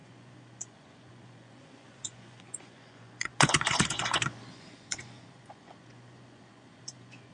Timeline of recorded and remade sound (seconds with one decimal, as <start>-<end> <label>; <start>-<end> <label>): 0.0-7.3 remade